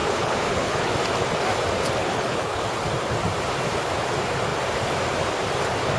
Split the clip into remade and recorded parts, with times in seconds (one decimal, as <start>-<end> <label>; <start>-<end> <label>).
0.0-0.9 remade; 0.9-2.0 recorded; 2.0-2.6 remade; 2.6-6.0 recorded